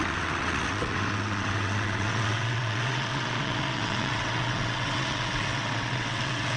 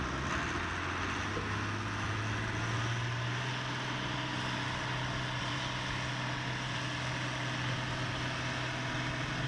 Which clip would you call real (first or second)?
second